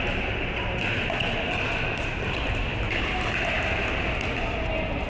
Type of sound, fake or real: real